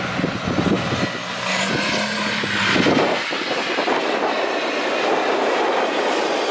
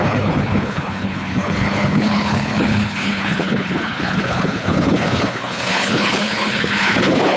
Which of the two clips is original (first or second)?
first